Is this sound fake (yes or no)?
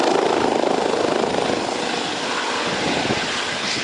no